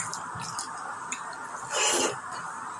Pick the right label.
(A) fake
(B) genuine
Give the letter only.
B